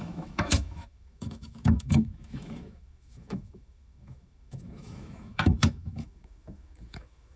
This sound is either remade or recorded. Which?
remade